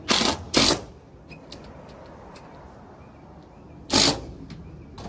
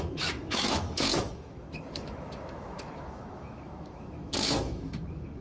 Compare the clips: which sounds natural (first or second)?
first